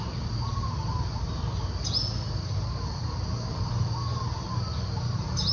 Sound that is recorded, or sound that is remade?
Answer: recorded